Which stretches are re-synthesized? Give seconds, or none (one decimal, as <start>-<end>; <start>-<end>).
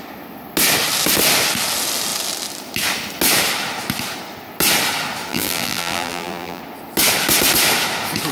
5.3-6.6